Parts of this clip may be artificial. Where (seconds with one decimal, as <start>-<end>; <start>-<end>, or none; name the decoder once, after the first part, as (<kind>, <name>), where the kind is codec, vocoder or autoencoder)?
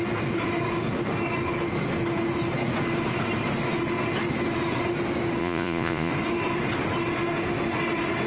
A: 5.4-6.1 (vocoder, Vocos)